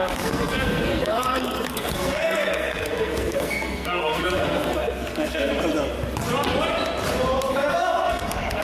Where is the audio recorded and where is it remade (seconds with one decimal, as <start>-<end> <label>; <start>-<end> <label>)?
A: 0.0-5.5 remade; 5.5-7.5 recorded; 7.5-8.6 remade